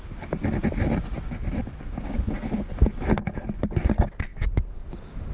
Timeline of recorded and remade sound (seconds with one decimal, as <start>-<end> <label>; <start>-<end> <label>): 0.0-4.3 recorded; 4.3-5.3 remade